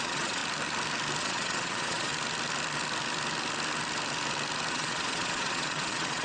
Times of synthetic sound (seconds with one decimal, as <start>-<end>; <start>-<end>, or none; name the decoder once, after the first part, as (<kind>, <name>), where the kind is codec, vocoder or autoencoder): 0.0-0.4 (vocoder, Vocos); 1.2-2.1; 4.7-6.2

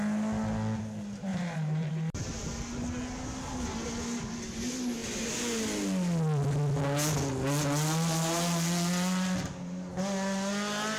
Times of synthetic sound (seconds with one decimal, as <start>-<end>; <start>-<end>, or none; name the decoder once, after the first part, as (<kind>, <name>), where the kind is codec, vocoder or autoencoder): 1.3-1.9 (vocoder, BigVGAN v2)

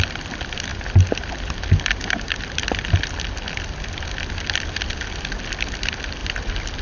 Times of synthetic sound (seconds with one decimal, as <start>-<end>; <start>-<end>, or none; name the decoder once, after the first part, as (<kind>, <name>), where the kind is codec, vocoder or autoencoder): 6.2-6.8 (vocoder, BigVGAN v2)

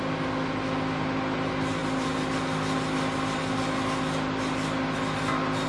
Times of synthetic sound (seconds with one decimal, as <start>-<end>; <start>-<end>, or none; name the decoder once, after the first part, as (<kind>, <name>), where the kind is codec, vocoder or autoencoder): none

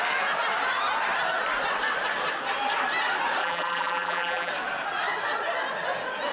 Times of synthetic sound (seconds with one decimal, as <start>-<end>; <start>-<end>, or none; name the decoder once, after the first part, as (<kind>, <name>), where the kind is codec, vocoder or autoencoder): 3.4-4.5 (vocoder, BigVGAN v2)